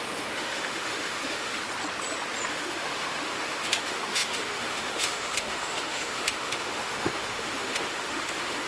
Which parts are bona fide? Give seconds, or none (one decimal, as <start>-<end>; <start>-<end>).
1.6-2.5